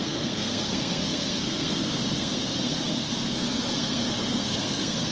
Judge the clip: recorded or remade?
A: remade